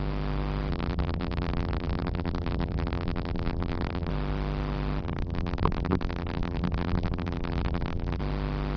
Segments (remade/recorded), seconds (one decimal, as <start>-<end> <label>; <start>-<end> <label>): 0.0-0.7 recorded; 0.7-4.1 remade; 4.1-5.0 recorded; 5.0-8.2 remade; 8.2-8.8 recorded